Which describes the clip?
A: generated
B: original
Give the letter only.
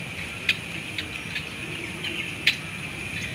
B